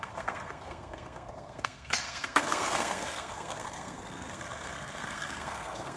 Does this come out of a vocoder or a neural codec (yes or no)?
yes